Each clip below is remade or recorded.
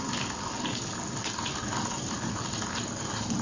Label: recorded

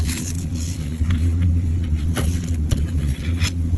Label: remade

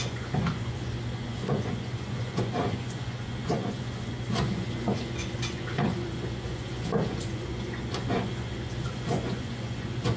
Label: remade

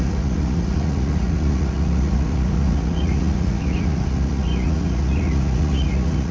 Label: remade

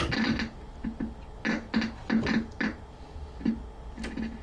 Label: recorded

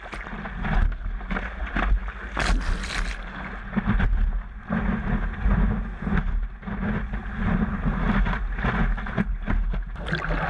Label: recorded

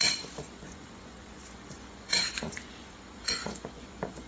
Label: remade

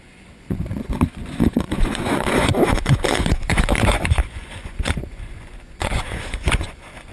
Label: remade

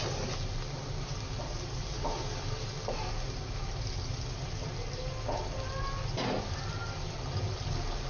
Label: recorded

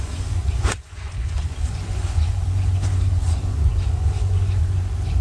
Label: remade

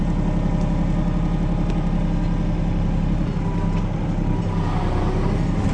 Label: recorded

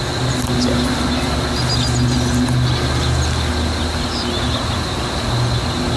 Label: recorded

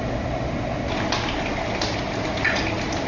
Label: recorded